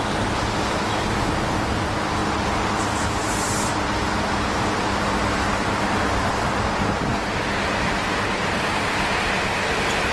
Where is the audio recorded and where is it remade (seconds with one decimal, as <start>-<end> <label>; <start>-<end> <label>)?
0.0-2.2 recorded; 2.2-6.3 remade; 6.3-8.0 recorded; 8.0-8.9 remade; 8.9-10.1 recorded